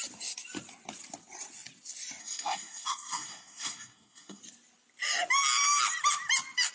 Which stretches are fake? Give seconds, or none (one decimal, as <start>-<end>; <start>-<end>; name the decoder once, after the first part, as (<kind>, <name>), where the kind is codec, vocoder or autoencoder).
2.2-4.4 (codec, SNAC)